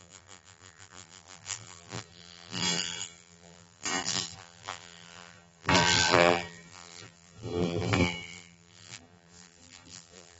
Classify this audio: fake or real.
fake